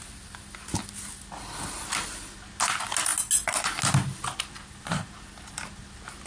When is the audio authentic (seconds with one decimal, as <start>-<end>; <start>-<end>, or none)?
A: 0.0-6.3